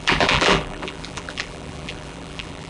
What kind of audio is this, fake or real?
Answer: fake